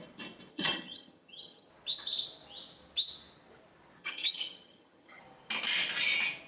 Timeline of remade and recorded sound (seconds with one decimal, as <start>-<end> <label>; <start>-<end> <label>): 0.0-0.5 recorded; 0.5-1.7 remade; 1.7-4.0 recorded; 4.0-5.2 remade; 5.2-6.5 recorded